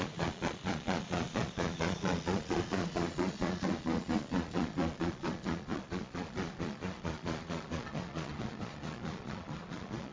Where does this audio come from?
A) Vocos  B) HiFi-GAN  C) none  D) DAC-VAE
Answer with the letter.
A